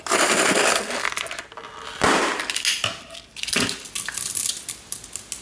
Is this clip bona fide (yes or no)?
yes